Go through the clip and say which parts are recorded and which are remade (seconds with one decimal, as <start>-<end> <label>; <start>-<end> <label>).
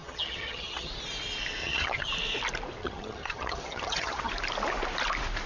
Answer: 0.0-0.9 remade; 0.9-1.6 recorded; 1.6-2.1 remade; 2.1-2.8 recorded; 2.8-4.3 remade; 4.3-5.5 recorded